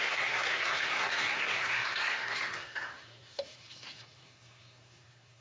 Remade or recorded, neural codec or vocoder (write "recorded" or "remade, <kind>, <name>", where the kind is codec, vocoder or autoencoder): remade, codec, SNAC